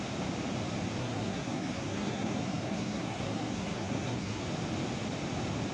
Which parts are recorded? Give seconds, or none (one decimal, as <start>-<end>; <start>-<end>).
0.0-1.0; 4.4-5.7